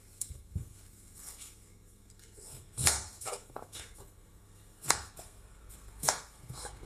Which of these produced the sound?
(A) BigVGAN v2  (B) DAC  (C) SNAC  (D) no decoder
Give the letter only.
C